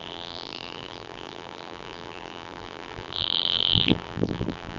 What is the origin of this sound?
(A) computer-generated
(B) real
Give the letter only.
A